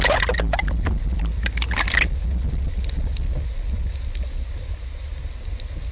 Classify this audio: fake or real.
real